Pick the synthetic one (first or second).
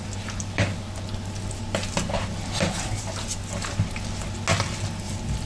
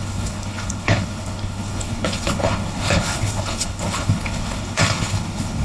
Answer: second